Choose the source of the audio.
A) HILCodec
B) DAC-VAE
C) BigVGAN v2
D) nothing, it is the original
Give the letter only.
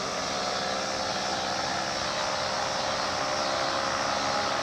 D